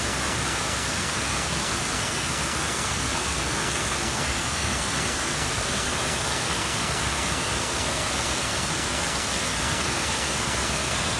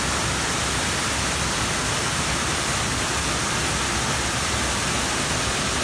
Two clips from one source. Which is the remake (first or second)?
first